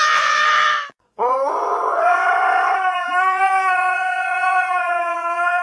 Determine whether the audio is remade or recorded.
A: remade